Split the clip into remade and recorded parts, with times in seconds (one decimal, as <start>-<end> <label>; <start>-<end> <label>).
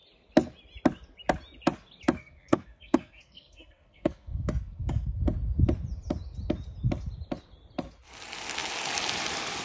0.0-2.2 recorded; 2.2-5.2 remade; 5.2-9.6 recorded